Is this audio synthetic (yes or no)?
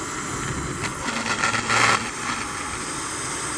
no